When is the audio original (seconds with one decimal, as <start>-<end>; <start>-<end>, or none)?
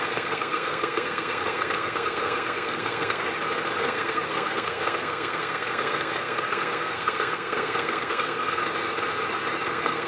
3.3-3.8; 8.6-9.7